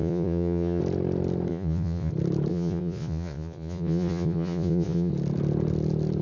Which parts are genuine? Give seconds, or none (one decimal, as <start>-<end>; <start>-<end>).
0.8-1.5; 2.1-2.5; 5.1-6.2

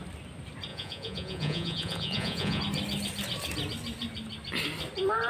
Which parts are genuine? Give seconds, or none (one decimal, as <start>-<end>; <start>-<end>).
0.0-0.7; 2.6-5.3

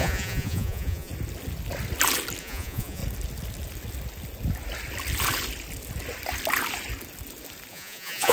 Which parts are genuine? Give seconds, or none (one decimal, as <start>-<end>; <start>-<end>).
1.1-2.4; 3.0-7.7